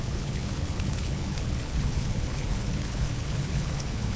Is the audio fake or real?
fake